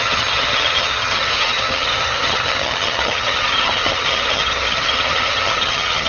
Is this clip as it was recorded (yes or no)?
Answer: no